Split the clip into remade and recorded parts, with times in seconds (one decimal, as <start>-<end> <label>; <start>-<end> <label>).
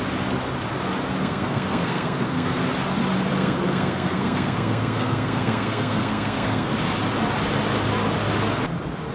0.0-1.2 recorded; 1.2-2.6 remade; 2.6-3.3 recorded; 3.3-6.7 remade; 6.7-9.1 recorded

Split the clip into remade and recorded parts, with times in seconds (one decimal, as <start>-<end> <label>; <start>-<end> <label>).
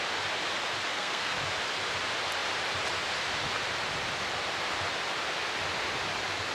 0.0-0.9 recorded; 0.9-1.4 remade; 1.4-6.5 recorded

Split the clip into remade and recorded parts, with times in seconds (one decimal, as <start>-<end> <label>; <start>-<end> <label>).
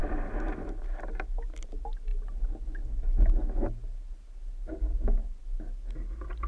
0.0-6.5 recorded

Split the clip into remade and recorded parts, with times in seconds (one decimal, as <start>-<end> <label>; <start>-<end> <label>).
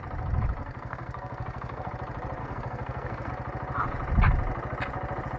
0.0-0.6 recorded; 0.6-1.9 remade; 1.9-2.4 recorded; 2.4-3.3 remade; 3.3-5.4 recorded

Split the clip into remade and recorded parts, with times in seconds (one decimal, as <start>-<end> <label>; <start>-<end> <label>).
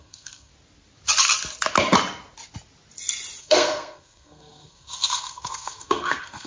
0.0-0.5 remade; 0.5-3.4 recorded; 3.4-6.5 remade